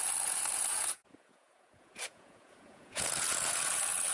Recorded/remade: remade